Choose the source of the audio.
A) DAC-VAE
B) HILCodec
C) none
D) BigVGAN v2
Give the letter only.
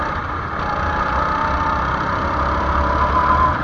C